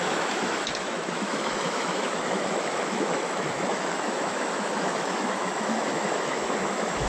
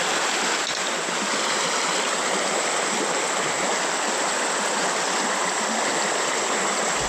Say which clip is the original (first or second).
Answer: second